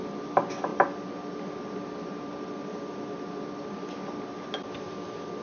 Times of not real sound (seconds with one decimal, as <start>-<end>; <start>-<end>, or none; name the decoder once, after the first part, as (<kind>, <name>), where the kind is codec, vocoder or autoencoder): none